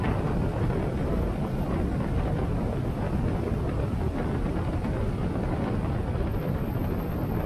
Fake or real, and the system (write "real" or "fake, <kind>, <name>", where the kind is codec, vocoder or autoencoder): real